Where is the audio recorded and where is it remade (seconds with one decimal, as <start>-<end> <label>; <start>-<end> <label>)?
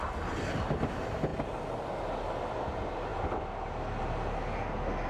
0.0-5.1 recorded